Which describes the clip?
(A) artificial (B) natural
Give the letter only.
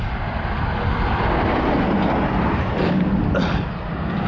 B